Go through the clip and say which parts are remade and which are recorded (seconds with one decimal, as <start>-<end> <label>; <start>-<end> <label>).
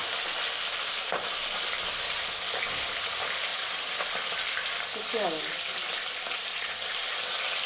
0.0-7.7 recorded